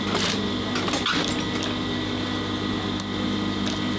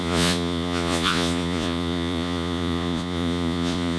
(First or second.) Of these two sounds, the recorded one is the first